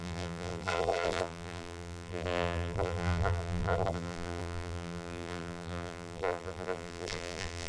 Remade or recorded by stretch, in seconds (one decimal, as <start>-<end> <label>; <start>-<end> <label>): 0.0-7.7 remade